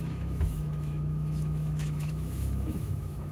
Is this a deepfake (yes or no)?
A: yes